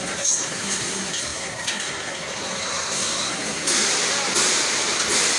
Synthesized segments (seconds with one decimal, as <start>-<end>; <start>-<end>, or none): 0.0-3.9

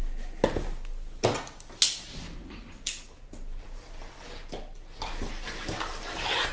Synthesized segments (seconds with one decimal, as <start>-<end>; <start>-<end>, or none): none

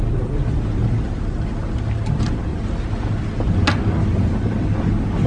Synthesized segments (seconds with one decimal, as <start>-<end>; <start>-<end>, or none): none

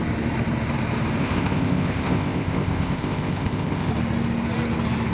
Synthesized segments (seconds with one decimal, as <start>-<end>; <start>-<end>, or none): 1.2-3.9

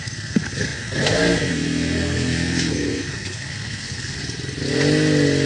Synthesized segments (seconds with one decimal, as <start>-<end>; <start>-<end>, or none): 0.0-4.2

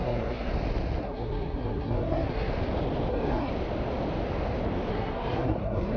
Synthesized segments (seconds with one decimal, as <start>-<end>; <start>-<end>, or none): 0.0-0.5; 1.0-2.5; 3.1-3.5; 4.9-6.0

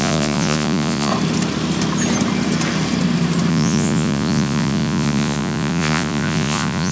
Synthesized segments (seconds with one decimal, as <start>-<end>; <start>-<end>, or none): 0.0-1.1; 3.5-6.9

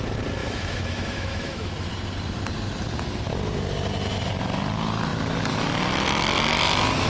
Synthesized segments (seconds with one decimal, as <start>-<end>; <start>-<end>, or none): 0.4-1.7